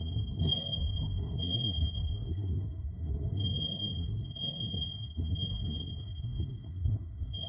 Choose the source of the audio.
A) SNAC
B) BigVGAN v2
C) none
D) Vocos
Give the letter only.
A